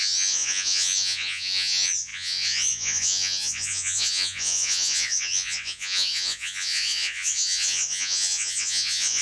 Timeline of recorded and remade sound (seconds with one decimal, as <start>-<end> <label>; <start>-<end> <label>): 0.0-9.2 remade